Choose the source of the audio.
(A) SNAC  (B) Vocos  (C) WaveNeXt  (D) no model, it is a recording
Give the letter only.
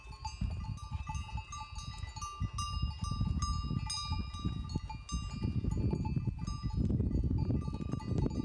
D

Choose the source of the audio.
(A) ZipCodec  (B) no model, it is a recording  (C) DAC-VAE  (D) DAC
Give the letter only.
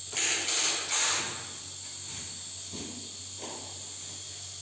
B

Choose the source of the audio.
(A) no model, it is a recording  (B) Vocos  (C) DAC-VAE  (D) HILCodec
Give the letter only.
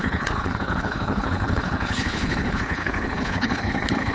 D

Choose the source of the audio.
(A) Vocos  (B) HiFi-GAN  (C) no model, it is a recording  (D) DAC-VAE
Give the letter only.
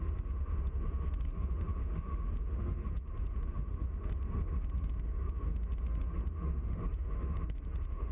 D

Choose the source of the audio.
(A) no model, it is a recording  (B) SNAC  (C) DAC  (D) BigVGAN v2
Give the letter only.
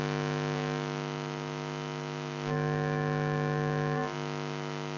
A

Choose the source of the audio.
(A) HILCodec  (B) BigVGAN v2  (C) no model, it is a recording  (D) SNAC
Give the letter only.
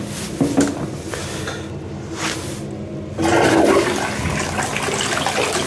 C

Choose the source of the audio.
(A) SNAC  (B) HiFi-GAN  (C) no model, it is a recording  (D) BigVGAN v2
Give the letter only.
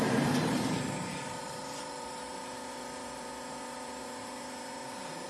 D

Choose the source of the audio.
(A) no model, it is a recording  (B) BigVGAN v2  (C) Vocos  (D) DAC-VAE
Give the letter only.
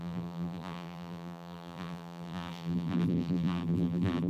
B